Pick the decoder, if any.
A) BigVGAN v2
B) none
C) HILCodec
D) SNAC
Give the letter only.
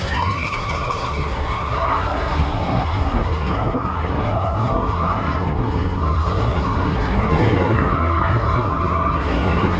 D